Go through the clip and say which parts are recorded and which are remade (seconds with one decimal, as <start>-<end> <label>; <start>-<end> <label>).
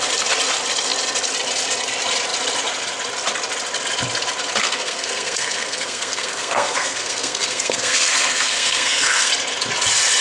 0.0-4.6 recorded; 4.6-9.3 remade; 9.3-10.2 recorded